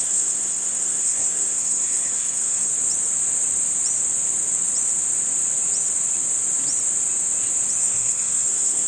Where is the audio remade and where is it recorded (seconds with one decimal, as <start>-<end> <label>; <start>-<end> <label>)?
0.0-2.7 remade; 2.7-7.8 recorded; 7.8-8.9 remade

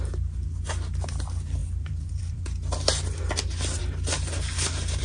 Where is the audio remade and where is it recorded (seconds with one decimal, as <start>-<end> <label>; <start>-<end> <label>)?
0.0-1.6 recorded; 1.6-2.4 remade; 2.4-5.0 recorded

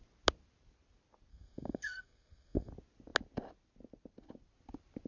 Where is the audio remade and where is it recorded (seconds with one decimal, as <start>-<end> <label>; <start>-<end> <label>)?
0.0-1.3 recorded; 1.3-2.7 remade; 2.7-5.1 recorded

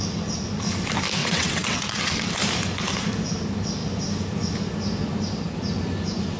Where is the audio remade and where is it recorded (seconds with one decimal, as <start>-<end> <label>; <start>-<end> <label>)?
0.0-1.2 recorded; 1.2-2.3 remade; 2.3-6.4 recorded

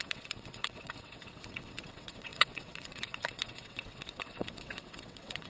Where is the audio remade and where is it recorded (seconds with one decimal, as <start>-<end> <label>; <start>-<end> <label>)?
0.0-5.5 remade

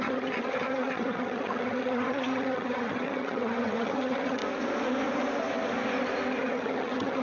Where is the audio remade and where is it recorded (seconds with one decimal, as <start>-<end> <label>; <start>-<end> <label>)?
0.0-4.4 remade; 4.4-6.4 recorded; 6.4-7.2 remade

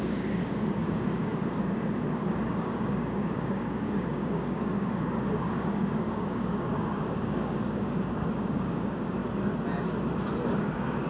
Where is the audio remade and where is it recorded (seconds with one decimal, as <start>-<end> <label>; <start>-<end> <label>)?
0.0-9.2 remade; 9.2-10.6 recorded; 10.6-11.1 remade

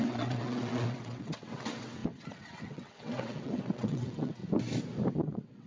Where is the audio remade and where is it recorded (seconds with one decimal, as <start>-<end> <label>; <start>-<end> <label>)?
0.0-4.4 remade; 4.4-5.1 recorded; 5.1-5.7 remade